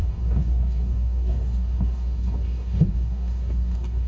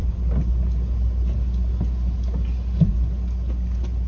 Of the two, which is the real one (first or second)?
second